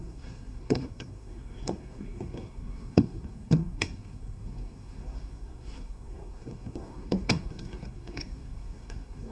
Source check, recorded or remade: remade